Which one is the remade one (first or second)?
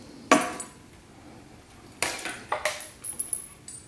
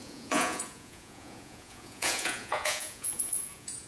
second